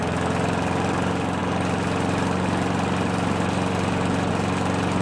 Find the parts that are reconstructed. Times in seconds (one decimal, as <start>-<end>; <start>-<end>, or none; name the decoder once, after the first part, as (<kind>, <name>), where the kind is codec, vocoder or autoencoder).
none